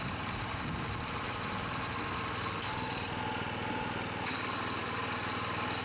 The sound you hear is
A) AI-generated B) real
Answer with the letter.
B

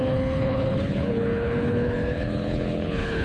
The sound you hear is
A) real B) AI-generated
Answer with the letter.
B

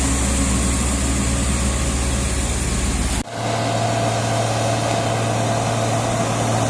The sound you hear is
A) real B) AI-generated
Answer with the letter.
A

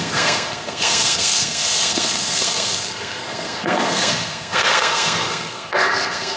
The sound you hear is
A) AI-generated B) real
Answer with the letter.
A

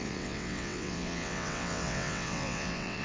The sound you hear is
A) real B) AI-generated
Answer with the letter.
B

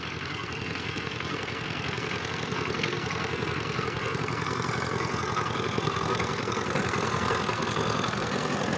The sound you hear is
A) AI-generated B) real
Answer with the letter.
A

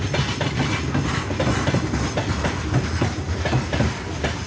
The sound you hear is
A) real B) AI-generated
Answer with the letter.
A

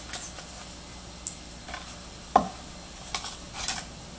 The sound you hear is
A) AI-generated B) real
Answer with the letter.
B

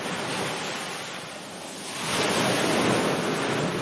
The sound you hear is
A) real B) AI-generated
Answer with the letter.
A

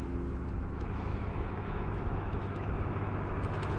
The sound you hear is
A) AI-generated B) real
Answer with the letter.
A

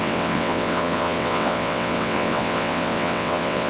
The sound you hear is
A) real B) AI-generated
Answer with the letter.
B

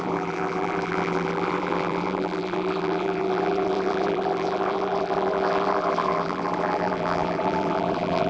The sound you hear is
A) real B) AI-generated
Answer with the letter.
B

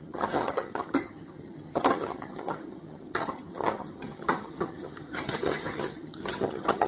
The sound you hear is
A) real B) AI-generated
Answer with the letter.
B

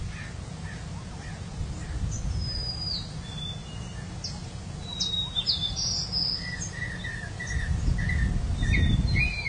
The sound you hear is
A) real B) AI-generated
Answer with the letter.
A